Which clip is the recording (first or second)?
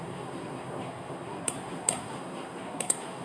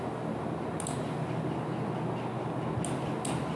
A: second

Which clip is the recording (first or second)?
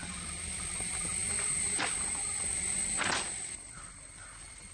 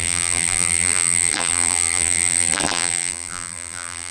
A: first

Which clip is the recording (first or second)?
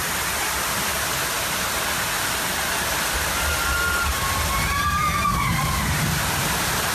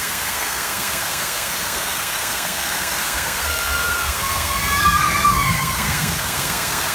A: first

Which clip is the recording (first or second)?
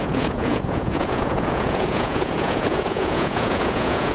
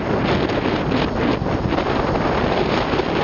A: second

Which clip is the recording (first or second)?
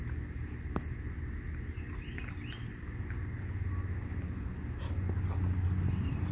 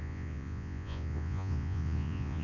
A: first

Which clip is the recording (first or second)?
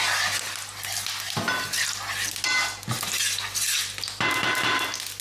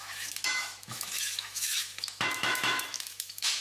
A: first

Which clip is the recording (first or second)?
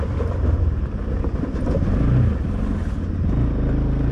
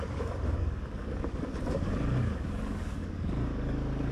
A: first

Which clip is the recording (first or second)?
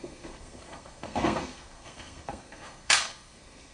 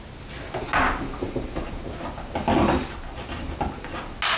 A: second